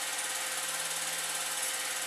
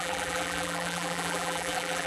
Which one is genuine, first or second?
first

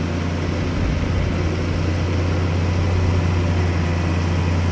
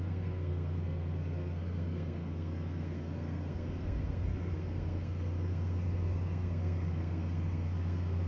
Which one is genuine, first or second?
first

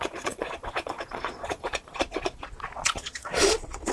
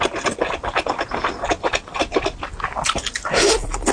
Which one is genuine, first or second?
second